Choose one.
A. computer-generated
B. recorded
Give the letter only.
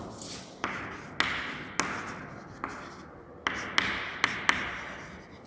B